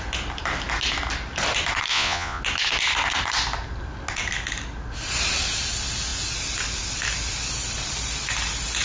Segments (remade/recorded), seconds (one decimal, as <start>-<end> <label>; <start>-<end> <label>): 0.0-1.9 recorded; 1.9-2.4 remade; 2.4-8.8 recorded